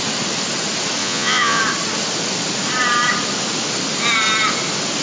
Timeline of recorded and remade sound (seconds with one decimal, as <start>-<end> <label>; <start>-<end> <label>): 0.0-1.0 recorded; 1.0-1.6 remade; 1.6-5.0 recorded